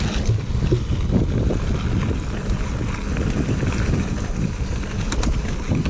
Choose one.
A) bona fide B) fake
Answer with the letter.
A